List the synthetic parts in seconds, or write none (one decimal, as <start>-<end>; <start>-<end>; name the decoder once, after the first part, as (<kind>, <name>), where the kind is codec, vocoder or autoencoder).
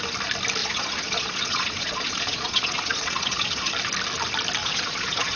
0.6-3.7 (vocoder, Vocos); 4.6-5.4